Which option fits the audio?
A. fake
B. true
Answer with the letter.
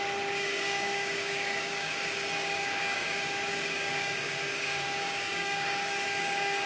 A